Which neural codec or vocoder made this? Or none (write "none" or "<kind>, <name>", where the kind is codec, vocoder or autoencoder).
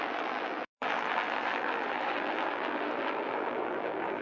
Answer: vocoder, BigVGAN v2